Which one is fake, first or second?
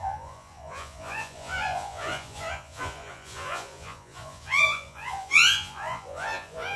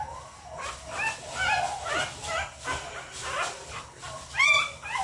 first